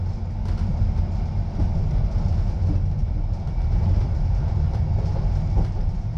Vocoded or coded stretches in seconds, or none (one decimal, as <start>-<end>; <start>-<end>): 3.0-6.2